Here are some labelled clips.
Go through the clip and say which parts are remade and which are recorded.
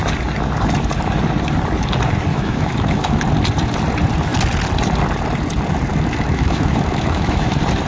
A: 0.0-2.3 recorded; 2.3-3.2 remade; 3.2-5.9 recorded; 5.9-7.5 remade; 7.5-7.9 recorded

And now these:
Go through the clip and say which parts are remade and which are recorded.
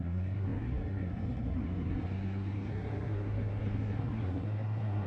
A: 0.0-5.1 remade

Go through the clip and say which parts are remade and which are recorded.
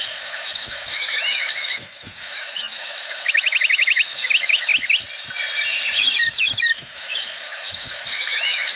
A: 0.0-4.7 remade; 4.7-6.0 recorded; 6.0-8.8 remade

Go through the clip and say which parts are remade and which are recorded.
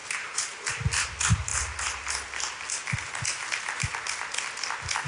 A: 0.0-0.7 remade; 0.7-5.1 recorded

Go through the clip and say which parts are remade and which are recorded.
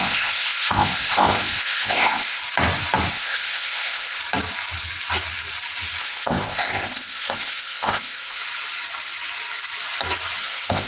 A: 0.0-2.4 remade; 2.4-3.1 recorded; 3.1-4.2 remade; 4.2-6.0 recorded; 6.0-8.4 remade; 8.4-10.4 recorded; 10.4-10.9 remade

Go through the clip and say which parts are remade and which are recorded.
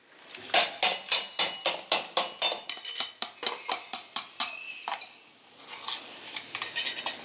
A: 0.0-7.2 recorded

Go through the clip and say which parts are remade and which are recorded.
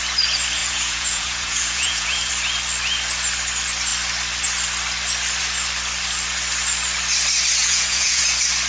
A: 0.0-0.6 recorded; 0.6-2.3 remade; 2.3-7.6 recorded; 7.6-8.2 remade; 8.2-8.7 recorded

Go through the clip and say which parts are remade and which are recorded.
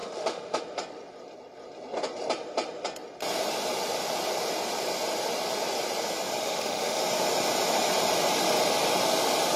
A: 0.0-0.6 remade; 0.6-6.4 recorded; 6.4-7.0 remade; 7.0-9.6 recorded